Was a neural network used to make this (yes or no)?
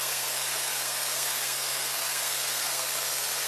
yes